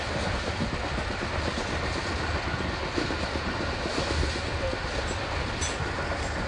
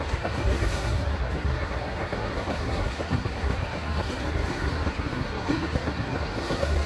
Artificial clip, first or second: second